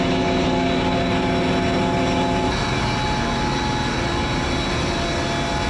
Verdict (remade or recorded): recorded